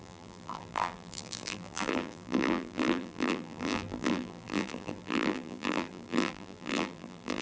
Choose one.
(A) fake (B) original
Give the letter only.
A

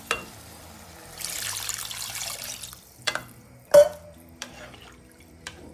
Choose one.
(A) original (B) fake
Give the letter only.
B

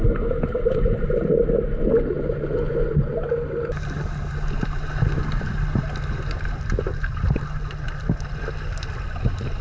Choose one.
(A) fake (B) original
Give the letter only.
B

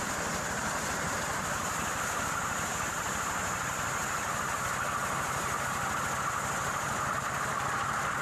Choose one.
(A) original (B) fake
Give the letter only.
A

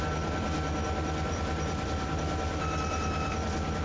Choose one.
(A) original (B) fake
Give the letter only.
B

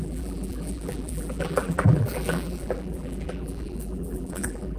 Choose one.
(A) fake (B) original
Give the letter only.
A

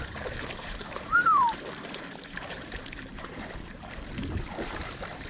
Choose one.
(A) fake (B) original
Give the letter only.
A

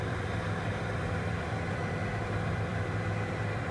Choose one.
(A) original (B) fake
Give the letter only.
B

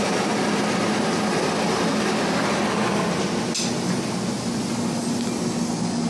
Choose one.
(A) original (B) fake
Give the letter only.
A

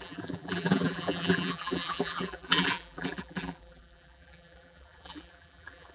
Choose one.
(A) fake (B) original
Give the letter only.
A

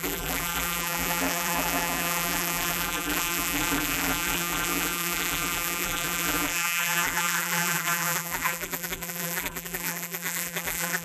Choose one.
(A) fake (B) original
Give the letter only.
A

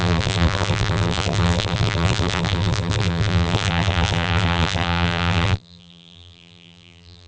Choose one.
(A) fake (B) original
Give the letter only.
A